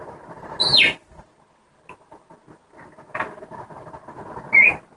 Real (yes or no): yes